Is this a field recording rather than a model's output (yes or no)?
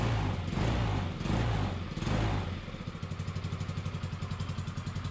yes